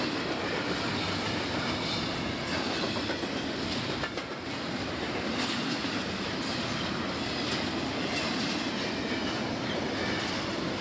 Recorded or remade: recorded